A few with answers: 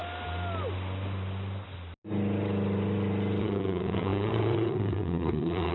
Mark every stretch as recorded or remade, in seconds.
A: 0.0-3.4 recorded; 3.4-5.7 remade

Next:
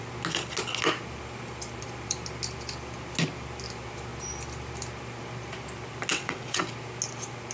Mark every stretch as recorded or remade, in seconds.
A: 0.0-6.1 recorded; 6.1-6.6 remade; 6.6-7.5 recorded

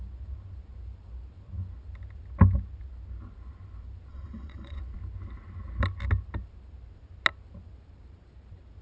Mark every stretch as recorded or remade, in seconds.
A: 0.0-4.1 recorded; 4.1-4.8 remade; 4.8-8.8 recorded

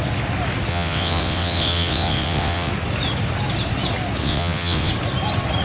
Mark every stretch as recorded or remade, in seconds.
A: 0.0-0.7 recorded; 0.7-2.7 remade; 2.7-4.2 recorded; 4.2-4.9 remade; 4.9-5.6 recorded